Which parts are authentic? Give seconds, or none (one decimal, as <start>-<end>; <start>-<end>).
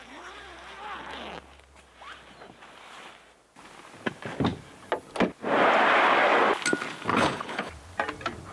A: 0.0-7.1; 7.7-8.5